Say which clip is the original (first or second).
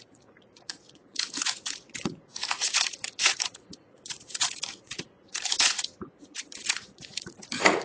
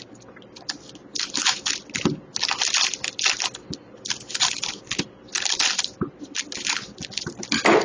second